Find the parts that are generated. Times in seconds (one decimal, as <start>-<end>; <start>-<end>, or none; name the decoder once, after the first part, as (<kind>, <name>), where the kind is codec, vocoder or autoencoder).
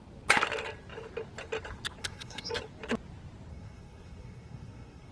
2.0-2.5 (codec, SNAC); 3.5-5.1